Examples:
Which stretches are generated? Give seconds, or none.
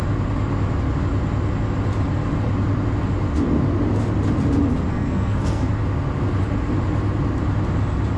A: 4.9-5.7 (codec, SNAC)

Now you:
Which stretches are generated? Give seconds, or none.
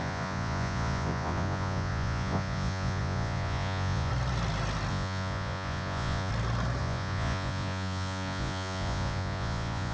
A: 0.0-4.1 (vocoder, Vocos); 4.9-6.3; 6.8-9.9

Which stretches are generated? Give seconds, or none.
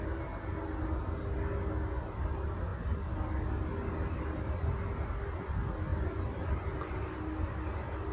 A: none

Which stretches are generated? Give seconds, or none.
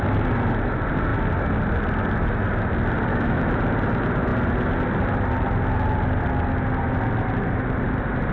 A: 3.1-3.6 (autoencoder, DAC-VAE)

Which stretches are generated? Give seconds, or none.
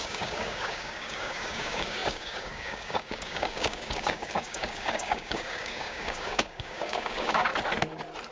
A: 0.0-7.5 (codec, DAC)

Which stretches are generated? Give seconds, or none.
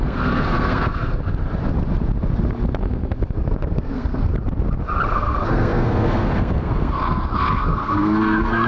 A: 0.0-1.2 (codec, SNAC); 2.8-4.3; 5.1-8.7